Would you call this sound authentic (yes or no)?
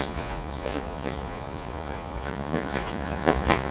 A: no